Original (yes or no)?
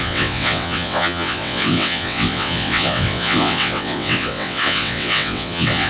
no